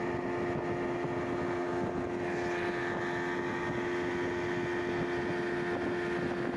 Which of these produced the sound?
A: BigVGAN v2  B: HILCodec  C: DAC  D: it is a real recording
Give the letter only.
D